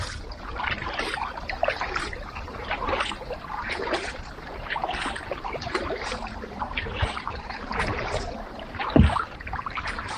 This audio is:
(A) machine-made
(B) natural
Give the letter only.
A